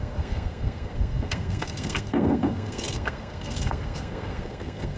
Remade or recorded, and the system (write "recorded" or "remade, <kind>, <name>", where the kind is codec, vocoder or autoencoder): remade, codec, SNAC